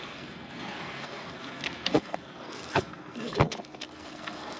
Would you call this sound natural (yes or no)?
no